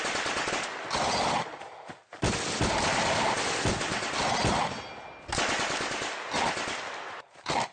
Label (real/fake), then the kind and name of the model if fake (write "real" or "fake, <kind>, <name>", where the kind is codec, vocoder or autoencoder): real